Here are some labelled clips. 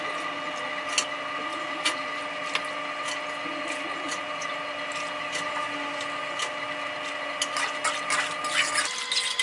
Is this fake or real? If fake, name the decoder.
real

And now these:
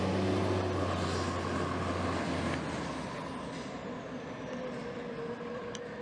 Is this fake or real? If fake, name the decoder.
real